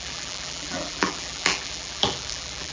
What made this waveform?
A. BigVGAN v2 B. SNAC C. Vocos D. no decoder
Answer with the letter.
A